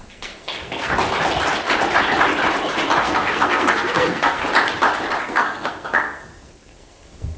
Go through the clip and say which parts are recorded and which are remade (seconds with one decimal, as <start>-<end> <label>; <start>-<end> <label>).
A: 0.0-0.9 remade; 0.9-3.0 recorded; 3.0-4.4 remade; 4.4-5.2 recorded; 5.2-7.4 remade

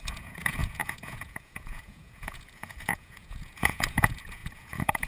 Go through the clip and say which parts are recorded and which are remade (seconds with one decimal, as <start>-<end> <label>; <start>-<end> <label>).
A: 0.0-5.1 remade

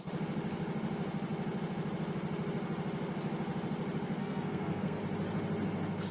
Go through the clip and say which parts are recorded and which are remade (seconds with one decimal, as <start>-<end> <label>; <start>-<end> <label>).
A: 0.0-4.2 recorded; 4.2-5.0 remade; 5.0-6.1 recorded

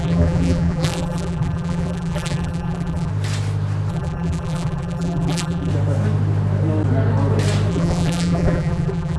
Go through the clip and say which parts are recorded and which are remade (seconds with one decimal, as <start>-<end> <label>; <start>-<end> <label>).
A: 0.0-3.1 remade; 3.1-3.9 recorded; 3.9-5.7 remade; 5.7-7.7 recorded; 7.7-9.2 remade

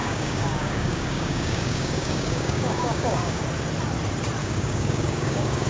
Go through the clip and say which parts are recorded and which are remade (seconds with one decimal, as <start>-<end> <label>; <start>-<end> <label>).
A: 0.0-3.4 remade; 3.4-4.4 recorded; 4.4-5.7 remade